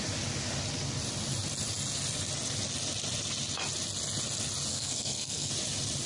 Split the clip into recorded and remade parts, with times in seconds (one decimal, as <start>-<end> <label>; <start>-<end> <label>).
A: 0.0-4.7 recorded; 4.7-5.5 remade; 5.5-6.1 recorded